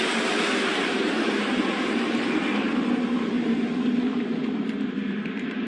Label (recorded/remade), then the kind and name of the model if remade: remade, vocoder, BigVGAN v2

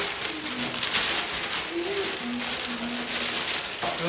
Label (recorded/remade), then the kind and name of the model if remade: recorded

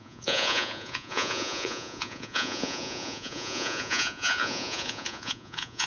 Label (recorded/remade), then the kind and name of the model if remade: remade, vocoder, Vocos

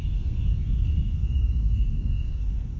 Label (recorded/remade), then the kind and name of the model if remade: remade, codec, SNAC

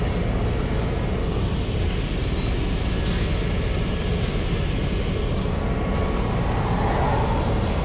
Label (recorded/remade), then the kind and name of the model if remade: recorded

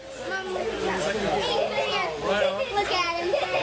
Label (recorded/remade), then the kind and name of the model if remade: recorded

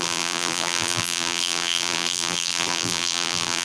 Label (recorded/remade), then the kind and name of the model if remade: remade, vocoder, BigVGAN v2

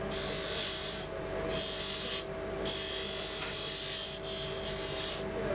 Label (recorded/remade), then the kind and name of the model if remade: recorded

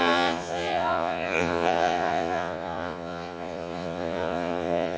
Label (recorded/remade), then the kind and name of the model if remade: remade, vocoder, Vocos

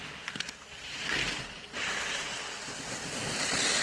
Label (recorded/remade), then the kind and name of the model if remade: recorded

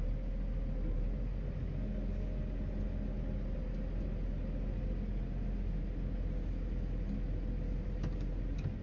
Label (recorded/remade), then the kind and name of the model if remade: recorded